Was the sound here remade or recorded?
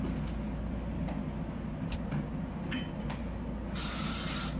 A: recorded